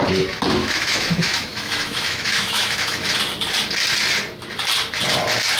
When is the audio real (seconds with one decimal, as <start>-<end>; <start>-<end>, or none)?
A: 0.0-0.6; 3.2-5.6